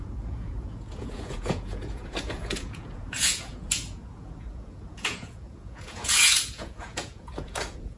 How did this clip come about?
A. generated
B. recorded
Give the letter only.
A